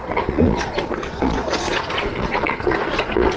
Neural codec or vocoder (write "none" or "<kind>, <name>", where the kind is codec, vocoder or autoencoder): vocoder, Vocos